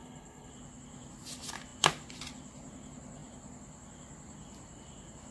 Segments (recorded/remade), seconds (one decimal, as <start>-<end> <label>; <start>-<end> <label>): 0.0-0.5 remade; 0.5-5.3 recorded